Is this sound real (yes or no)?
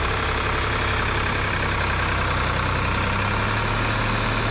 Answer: yes